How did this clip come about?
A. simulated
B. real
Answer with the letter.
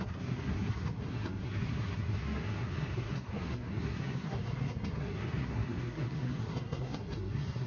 A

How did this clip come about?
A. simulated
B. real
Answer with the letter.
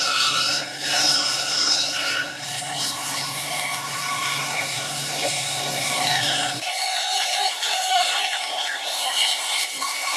A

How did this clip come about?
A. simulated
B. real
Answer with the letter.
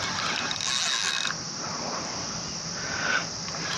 B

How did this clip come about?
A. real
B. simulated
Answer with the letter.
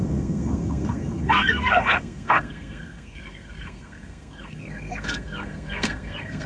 B